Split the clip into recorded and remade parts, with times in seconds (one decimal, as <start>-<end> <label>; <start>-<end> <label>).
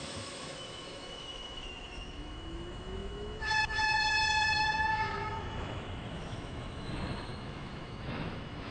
0.0-8.7 remade